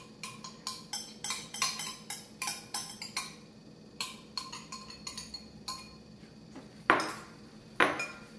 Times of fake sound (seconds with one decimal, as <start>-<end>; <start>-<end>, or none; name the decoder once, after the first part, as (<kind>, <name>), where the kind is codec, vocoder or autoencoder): none